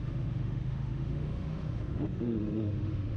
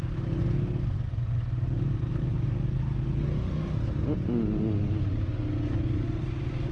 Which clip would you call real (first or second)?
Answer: second